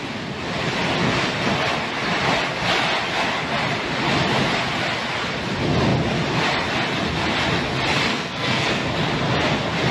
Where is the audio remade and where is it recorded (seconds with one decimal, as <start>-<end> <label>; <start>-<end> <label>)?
0.0-8.1 recorded; 8.1-8.9 remade; 8.9-9.9 recorded